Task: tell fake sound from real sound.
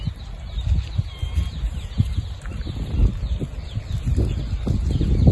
real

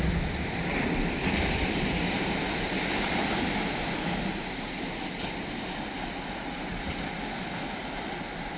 real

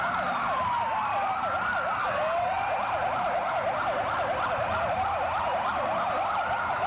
real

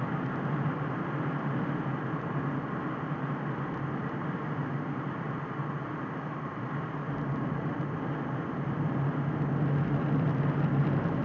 real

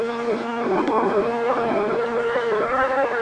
fake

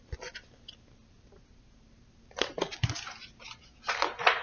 real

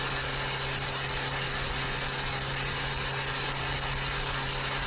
real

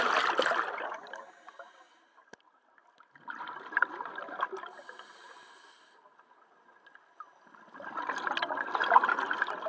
real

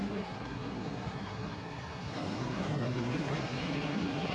fake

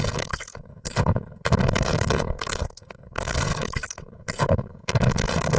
fake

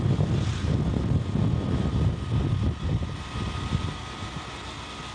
real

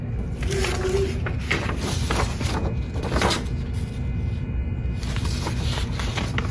real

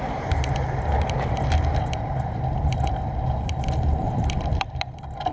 fake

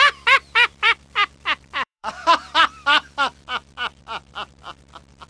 fake